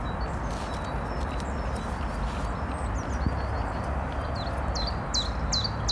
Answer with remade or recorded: recorded